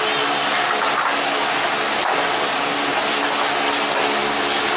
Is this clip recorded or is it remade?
recorded